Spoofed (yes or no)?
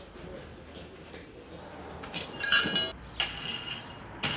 no